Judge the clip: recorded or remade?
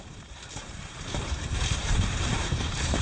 remade